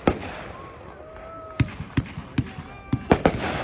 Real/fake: real